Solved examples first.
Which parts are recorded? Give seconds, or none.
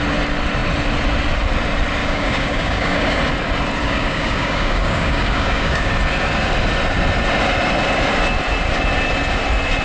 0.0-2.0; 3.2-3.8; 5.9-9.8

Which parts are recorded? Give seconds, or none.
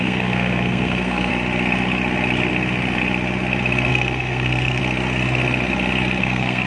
1.3-3.9; 4.8-6.2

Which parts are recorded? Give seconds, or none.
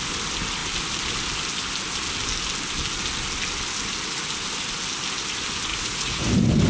0.0-5.7; 6.3-6.7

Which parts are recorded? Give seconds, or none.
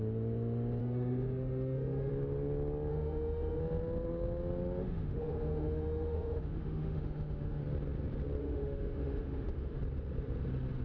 0.0-0.8; 2.1-2.9; 3.6-4.8; 7.6-8.4; 9.8-10.8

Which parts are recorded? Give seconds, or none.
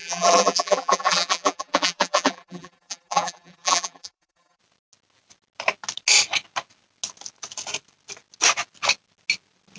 4.6-9.8